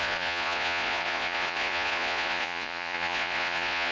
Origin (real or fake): fake